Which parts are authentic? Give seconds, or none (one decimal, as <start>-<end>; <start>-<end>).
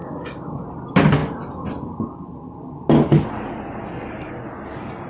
0.6-5.1